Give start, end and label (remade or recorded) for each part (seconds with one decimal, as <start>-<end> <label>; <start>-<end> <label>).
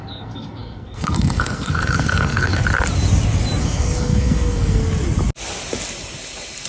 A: 0.0-2.6 remade; 2.6-3.6 recorded; 3.6-4.8 remade; 4.8-6.7 recorded